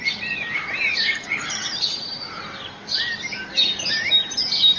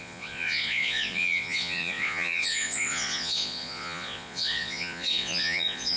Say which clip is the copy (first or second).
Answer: second